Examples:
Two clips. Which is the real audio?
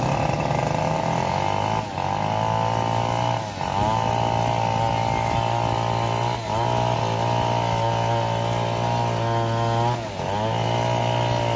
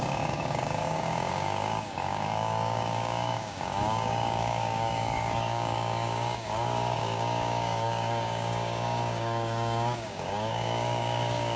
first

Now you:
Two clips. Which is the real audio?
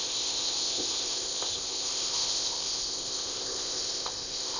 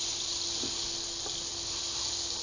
second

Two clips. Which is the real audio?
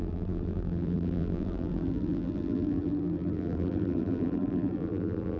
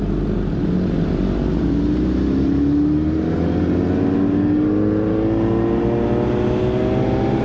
second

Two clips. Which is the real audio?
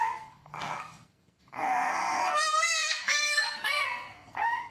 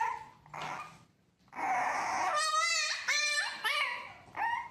second